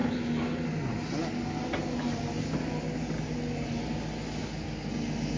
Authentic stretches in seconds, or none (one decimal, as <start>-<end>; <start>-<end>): 0.0-5.4